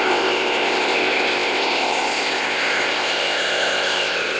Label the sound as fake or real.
fake